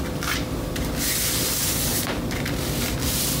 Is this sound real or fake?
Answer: real